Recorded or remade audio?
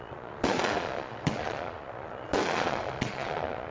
remade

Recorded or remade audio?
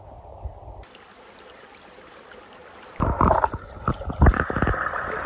recorded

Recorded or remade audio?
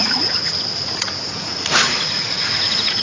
remade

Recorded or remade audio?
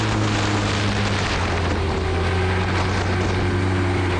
recorded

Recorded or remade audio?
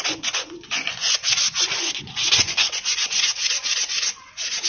remade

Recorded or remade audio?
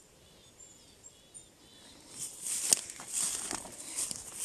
recorded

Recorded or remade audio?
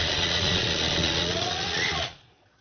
remade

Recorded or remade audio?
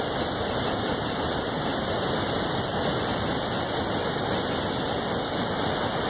recorded